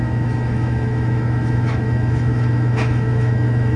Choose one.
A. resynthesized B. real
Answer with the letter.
A